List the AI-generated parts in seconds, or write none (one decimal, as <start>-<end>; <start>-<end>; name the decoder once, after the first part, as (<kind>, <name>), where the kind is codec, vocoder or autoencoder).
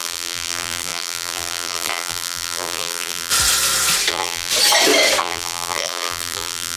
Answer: 0.0-3.3 (vocoder, BigVGAN v2); 4.1-4.5; 5.2-6.8